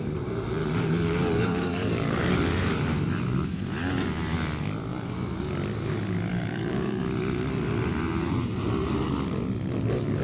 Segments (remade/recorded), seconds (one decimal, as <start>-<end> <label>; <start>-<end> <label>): 0.0-0.6 recorded; 0.6-2.3 remade; 2.3-4.9 recorded; 4.9-5.5 remade; 5.5-6.3 recorded; 6.3-7.0 remade; 7.0-10.2 recorded